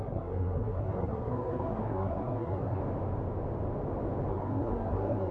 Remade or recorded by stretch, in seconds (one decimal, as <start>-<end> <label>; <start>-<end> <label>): 0.0-2.8 remade; 2.8-4.3 recorded; 4.3-5.3 remade